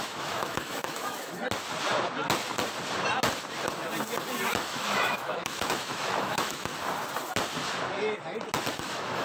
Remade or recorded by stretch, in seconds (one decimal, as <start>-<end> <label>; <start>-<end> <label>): 0.0-1.4 remade; 1.4-4.5 recorded; 4.5-6.7 remade; 6.7-8.7 recorded; 8.7-9.2 remade